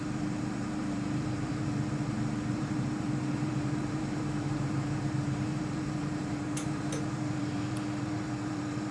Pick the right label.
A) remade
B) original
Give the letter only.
A